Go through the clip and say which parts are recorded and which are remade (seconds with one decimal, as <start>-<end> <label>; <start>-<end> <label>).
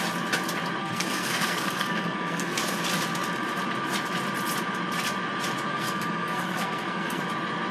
0.0-0.8 recorded; 0.8-2.6 remade; 2.6-5.7 recorded; 5.7-7.2 remade; 7.2-7.7 recorded